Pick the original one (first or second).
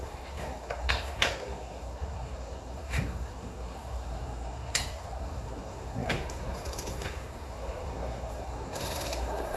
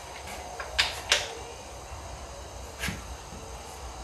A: second